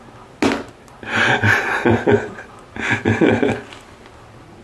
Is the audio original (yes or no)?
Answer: yes